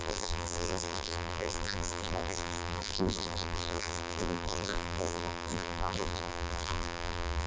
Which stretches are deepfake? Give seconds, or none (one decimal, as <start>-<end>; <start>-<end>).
0.0-7.5